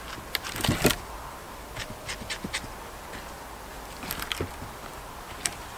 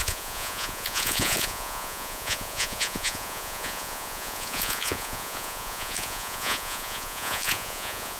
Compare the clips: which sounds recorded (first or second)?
first